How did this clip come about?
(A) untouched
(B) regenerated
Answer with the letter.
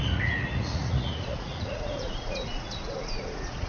B